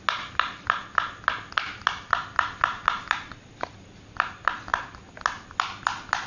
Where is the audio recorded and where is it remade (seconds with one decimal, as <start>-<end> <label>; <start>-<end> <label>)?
0.0-6.3 recorded